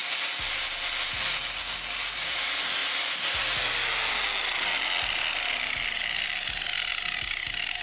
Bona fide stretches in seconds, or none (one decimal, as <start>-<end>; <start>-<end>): 0.0-7.8